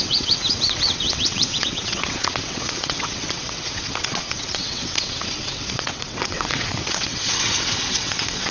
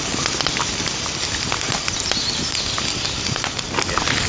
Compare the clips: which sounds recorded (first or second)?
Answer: second